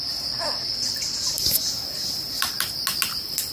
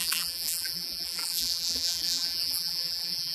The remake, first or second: second